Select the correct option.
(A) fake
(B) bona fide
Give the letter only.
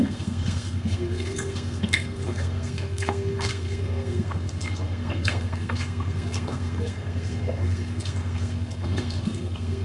A